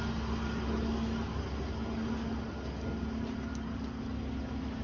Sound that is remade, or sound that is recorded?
recorded